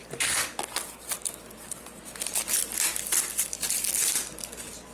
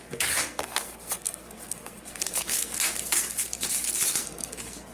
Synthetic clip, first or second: second